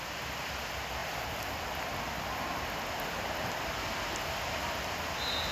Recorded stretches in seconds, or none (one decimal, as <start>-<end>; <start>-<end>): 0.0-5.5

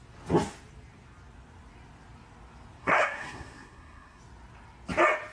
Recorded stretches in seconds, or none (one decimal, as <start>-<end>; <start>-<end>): 0.0-2.8; 4.2-5.3

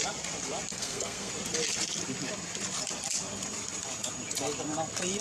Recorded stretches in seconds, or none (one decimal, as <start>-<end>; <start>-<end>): 0.0-0.7; 1.3-5.2

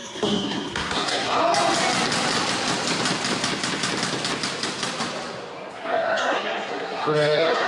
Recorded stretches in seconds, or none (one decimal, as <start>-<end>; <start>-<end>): 1.4-5.7

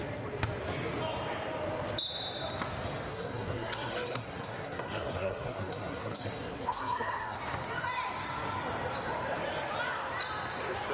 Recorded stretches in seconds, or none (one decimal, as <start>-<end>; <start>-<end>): 0.0-3.1; 7.4-10.9

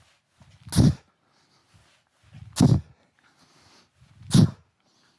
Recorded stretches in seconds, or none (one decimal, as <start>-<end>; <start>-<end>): 0.0-5.2